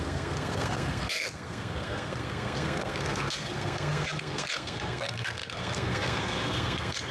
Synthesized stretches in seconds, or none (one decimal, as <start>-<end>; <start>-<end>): 0.0-7.1